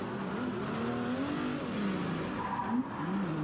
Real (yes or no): yes